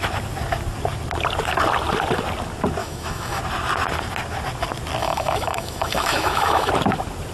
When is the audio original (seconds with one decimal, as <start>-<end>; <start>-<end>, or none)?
0.0-2.8; 3.4-5.0; 6.7-7.3